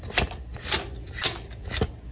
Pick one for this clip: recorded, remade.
recorded